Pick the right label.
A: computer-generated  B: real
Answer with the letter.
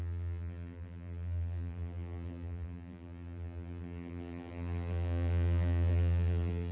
A